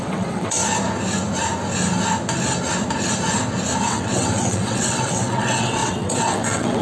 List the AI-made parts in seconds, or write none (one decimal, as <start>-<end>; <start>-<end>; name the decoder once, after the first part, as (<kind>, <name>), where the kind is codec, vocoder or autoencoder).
0.0-0.6 (vocoder, WaveNeXt); 3.9-6.8